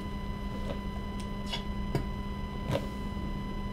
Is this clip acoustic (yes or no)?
yes